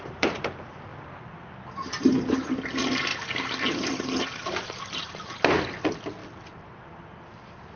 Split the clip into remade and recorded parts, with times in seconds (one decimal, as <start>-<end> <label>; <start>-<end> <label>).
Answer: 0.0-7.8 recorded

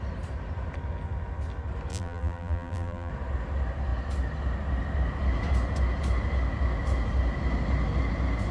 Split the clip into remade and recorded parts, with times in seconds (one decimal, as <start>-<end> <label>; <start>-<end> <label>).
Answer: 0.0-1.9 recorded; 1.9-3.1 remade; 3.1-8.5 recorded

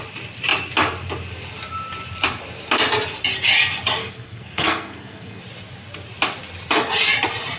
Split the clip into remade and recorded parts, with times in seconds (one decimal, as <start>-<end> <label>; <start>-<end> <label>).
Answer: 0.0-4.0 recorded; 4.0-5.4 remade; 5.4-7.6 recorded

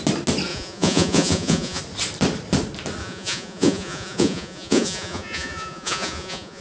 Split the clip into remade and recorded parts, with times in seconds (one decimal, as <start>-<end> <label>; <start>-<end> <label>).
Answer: 0.0-0.5 recorded; 0.5-1.8 remade; 1.8-3.0 recorded; 3.0-6.6 remade